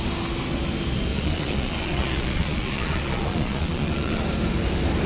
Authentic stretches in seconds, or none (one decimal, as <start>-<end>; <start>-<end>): 0.0-1.1; 4.2-5.1